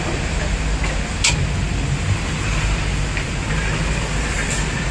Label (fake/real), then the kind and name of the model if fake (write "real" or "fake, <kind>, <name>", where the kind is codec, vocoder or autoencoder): real